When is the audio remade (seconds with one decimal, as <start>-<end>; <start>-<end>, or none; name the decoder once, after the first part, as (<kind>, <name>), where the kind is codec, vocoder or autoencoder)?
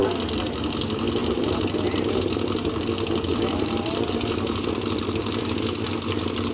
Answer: 1.2-2.8 (vocoder, BigVGAN v2); 3.3-5.3